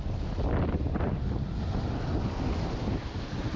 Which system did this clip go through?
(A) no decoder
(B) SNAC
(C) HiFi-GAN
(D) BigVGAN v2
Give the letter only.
A